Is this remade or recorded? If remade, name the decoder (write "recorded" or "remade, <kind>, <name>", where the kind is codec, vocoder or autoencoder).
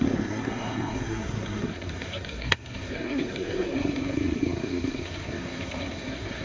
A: remade, codec, SNAC